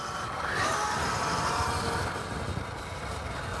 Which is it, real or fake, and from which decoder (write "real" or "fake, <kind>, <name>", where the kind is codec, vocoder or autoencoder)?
real